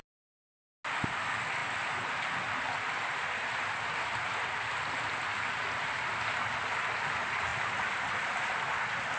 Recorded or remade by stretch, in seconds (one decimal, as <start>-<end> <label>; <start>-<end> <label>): 0.0-9.2 recorded